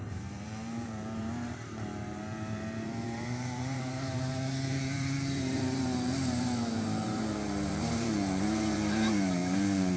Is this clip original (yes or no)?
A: no